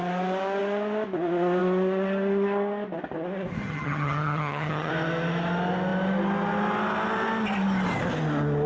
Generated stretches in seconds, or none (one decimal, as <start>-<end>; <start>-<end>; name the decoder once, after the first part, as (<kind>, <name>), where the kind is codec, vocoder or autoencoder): 3.6-4.9 (vocoder, HiFi-GAN)